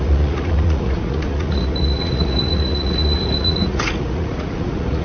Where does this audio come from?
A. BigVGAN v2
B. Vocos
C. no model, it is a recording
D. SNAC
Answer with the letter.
B